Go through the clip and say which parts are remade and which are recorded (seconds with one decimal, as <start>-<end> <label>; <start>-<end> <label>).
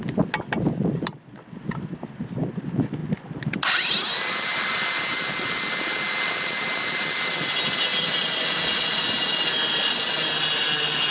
0.0-11.1 recorded